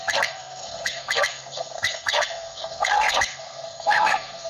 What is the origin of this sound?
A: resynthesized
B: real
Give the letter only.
A